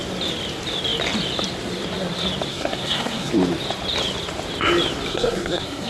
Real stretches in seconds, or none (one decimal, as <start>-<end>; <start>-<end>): 0.0-2.5; 3.3-5.1

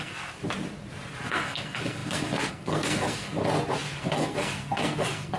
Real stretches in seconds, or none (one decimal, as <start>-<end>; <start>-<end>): 0.4-1.3; 3.4-4.0